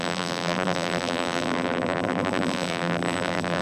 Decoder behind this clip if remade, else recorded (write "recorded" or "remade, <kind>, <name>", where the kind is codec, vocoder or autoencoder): remade, vocoder, BigVGAN v2